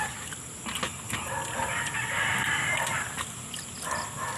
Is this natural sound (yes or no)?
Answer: yes